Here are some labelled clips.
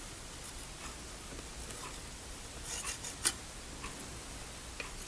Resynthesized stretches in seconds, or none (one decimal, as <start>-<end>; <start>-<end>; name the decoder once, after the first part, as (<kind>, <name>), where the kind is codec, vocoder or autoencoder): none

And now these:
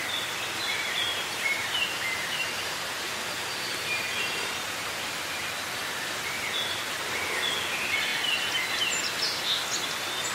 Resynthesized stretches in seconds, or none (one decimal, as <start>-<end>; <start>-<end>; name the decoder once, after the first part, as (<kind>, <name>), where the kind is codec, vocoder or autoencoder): 1.1-5.5 (vocoder, BigVGAN v2)

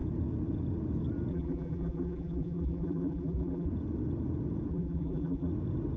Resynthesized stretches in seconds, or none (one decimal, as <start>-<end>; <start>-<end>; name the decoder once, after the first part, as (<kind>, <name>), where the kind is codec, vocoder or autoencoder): 1.3-3.7 (vocoder, BigVGAN v2); 4.7-5.5